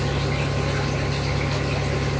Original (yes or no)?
yes